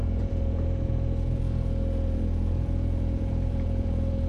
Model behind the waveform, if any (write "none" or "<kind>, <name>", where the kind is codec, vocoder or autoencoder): vocoder, Vocos